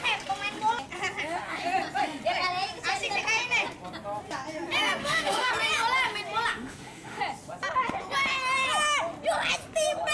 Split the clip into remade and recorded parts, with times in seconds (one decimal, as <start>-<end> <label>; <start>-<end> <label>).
0.0-5.0 recorded; 5.0-5.5 remade; 5.5-6.5 recorded; 6.5-7.2 remade; 7.2-10.1 recorded